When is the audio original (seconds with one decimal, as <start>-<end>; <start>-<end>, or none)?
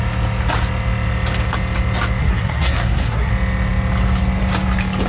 0.0-2.2; 3.3-5.1